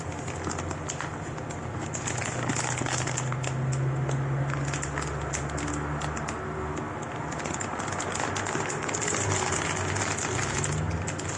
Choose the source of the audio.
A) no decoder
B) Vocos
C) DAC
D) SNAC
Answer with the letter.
A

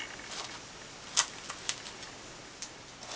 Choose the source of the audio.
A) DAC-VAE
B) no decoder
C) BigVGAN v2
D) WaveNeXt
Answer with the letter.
B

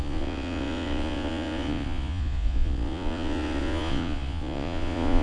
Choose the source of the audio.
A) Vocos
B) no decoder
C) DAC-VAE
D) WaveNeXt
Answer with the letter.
A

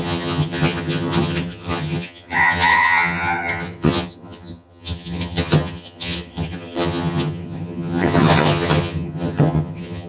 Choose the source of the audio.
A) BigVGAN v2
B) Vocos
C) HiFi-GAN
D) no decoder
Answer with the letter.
C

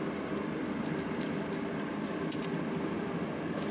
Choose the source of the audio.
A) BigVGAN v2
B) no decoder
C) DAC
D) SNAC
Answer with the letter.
B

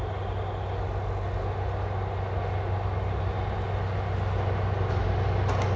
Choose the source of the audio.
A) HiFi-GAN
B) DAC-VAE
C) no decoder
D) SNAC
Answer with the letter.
C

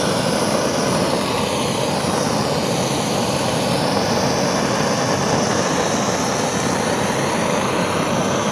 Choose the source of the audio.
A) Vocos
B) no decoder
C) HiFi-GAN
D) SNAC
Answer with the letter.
B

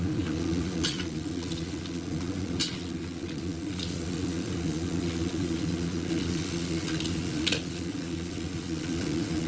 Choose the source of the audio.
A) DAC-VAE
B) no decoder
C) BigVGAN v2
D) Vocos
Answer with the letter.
D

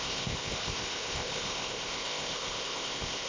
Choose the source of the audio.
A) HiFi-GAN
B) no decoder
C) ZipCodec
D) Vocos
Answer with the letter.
C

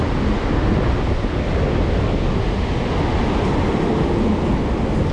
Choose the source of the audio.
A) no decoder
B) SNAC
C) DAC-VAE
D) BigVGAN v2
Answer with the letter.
A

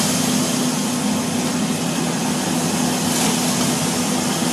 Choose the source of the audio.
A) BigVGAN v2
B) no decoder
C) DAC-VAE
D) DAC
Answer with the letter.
B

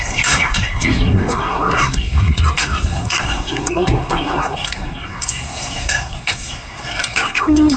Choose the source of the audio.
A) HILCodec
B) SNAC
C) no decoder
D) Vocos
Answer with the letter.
B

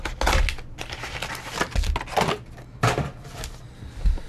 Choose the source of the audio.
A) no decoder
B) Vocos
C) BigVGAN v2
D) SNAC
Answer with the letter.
A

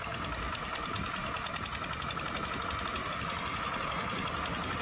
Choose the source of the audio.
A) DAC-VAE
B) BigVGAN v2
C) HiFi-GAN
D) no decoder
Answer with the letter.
D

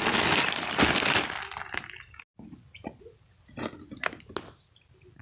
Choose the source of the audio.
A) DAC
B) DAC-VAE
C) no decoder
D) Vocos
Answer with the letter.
C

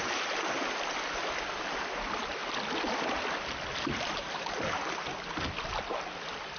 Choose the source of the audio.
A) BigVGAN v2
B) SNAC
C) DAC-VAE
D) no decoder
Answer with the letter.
D